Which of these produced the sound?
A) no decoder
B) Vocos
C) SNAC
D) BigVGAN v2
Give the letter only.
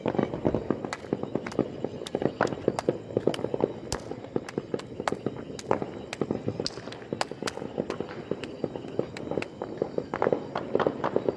A